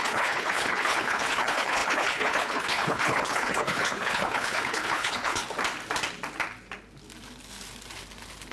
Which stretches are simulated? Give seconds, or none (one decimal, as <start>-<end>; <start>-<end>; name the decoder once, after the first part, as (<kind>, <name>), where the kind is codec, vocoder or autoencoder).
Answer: 0.0-5.4 (codec, HILCodec)

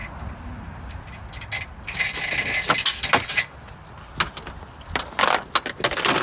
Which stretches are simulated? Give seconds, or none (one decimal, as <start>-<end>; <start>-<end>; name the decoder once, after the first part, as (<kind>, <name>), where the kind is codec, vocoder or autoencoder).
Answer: none

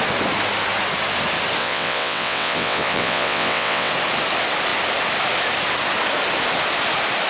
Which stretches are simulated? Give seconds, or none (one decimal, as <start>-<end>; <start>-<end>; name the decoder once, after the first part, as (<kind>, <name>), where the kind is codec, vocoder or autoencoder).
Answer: 1.6-3.9 (vocoder, WaveNeXt)

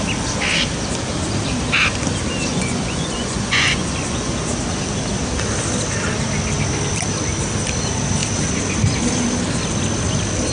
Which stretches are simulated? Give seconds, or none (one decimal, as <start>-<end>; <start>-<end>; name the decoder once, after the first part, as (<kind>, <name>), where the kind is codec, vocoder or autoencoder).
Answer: 2.5-4.3 (vocoder, Vocos)

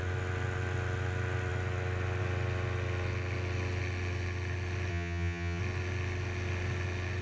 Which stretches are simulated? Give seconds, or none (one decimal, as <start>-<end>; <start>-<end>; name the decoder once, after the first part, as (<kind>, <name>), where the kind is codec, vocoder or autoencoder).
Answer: 4.9-5.6 (vocoder, HiFi-GAN)

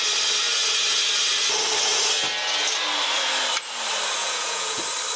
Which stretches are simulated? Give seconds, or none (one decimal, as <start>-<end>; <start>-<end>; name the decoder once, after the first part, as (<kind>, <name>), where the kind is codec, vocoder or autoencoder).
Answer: 4.2-4.8 (vocoder, Vocos)